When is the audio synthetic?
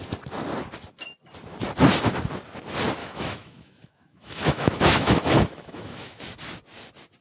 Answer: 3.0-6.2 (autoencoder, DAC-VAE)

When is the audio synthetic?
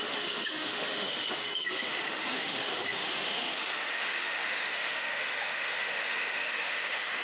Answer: 0.0-7.2 (autoencoder, DAC-VAE)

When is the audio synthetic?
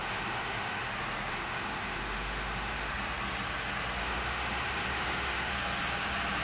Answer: 0.0-0.9 (autoencoder, DAC-VAE); 1.3-2.9; 4.0-5.5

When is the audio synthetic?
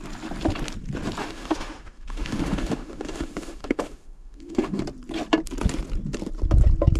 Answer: 1.2-4.8 (autoencoder, DAC-VAE)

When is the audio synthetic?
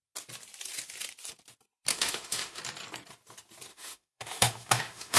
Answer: 1.9-2.6 (autoencoder, DAC-VAE); 3.7-5.2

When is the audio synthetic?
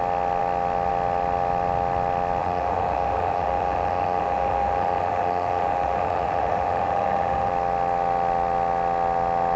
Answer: 2.4-7.5 (autoencoder, DAC-VAE)